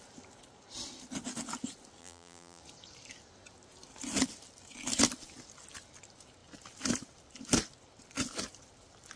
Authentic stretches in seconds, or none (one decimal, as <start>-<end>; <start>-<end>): 0.0-2.0; 2.6-9.2